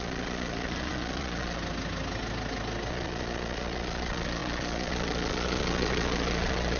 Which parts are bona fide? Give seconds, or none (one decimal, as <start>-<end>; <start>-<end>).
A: 1.6-2.9